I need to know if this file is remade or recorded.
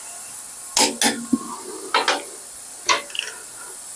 recorded